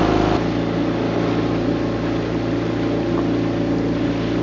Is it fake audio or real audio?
real